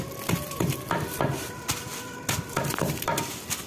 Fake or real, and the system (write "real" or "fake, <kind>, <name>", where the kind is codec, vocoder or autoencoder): real